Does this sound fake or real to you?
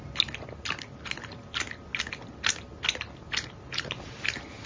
real